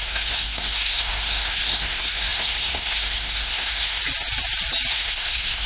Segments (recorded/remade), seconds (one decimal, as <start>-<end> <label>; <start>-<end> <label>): 0.0-4.0 remade; 4.0-4.9 recorded; 4.9-5.7 remade